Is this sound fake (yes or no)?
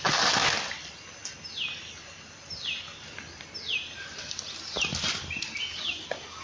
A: no